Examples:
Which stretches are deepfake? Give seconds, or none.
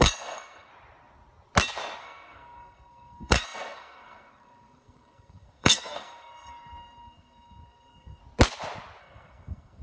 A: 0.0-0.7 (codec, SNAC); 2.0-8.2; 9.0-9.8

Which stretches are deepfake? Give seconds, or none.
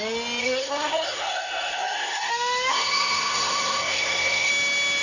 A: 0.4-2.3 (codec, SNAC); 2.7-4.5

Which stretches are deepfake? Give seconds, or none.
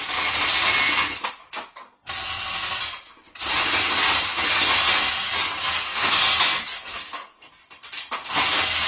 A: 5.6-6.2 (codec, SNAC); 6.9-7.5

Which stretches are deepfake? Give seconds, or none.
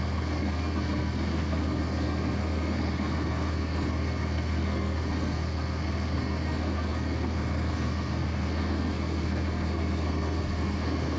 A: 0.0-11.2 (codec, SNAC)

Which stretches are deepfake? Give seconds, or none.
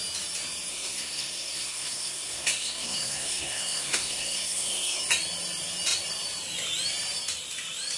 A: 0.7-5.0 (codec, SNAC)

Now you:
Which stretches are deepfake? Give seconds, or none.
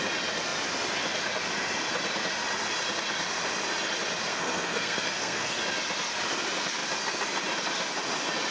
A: 4.3-5.6 (codec, SNAC)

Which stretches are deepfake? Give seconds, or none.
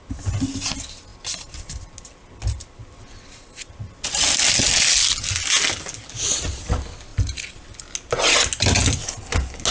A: none